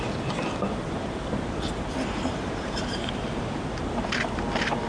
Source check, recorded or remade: recorded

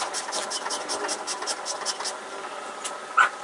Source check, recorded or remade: recorded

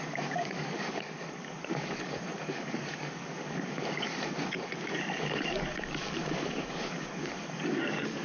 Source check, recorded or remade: remade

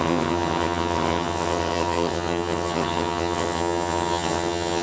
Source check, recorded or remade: remade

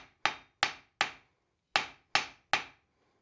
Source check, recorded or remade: recorded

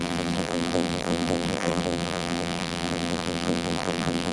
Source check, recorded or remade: remade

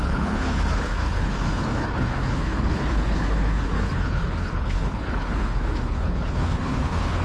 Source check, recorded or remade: remade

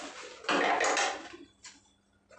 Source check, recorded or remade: recorded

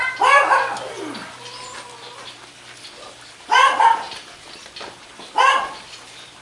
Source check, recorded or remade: recorded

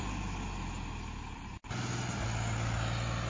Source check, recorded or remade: recorded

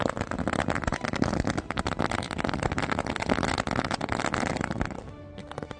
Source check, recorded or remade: recorded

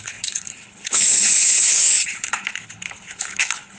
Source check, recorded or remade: remade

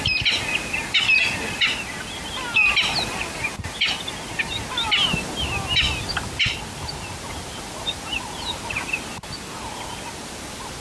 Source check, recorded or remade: recorded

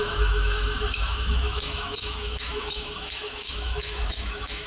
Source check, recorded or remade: remade